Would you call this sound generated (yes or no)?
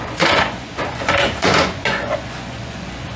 yes